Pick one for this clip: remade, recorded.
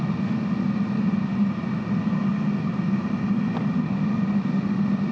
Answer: recorded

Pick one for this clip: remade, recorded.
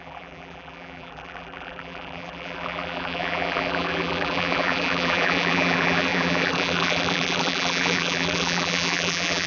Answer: remade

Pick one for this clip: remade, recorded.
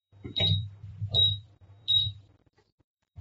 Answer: remade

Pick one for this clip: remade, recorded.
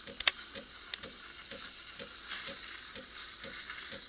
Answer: remade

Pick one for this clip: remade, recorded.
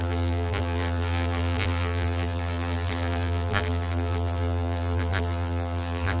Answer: remade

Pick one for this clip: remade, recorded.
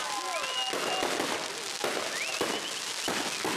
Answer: recorded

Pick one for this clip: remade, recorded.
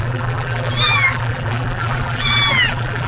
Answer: remade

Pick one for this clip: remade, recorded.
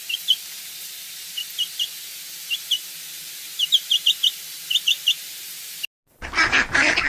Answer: recorded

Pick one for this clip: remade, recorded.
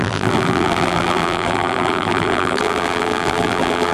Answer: remade